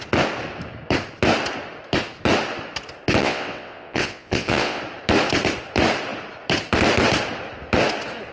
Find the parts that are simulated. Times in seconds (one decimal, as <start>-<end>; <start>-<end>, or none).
3.2-4.8